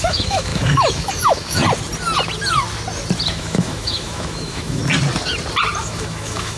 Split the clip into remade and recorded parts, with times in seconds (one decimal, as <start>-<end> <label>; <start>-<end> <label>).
0.0-1.6 remade; 1.6-3.3 recorded; 3.3-4.8 remade; 4.8-5.8 recorded; 5.8-6.6 remade